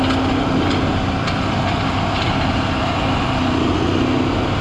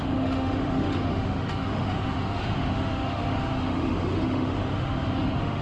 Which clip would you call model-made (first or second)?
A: second